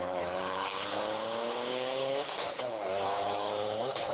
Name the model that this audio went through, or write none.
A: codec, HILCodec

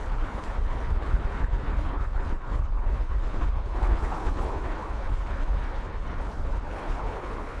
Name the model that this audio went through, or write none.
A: codec, HILCodec